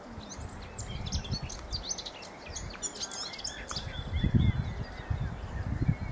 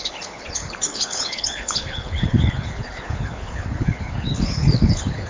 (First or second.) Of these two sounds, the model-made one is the second